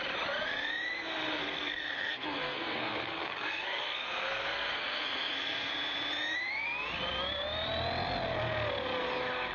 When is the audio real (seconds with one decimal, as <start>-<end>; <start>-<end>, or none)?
0.0-1.3; 5.7-9.5